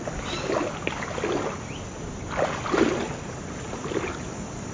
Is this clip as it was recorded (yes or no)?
yes